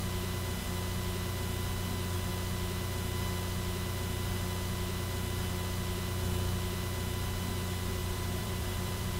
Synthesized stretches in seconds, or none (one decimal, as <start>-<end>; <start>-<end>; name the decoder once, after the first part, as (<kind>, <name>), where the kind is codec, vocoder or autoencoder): 8.0-9.2 (vocoder, BigVGAN v2)